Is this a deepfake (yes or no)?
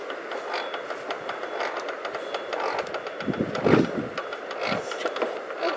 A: no